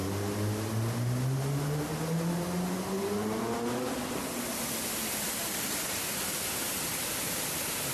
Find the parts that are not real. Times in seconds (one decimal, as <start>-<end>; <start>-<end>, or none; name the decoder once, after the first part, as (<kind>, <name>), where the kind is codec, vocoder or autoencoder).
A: 6.6-7.9 (vocoder, BigVGAN v2)